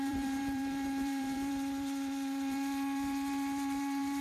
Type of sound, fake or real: fake